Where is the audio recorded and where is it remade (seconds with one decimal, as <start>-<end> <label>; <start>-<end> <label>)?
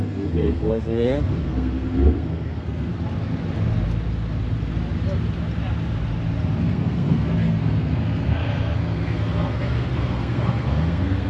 0.0-2.9 remade; 2.9-6.6 recorded; 6.6-11.3 remade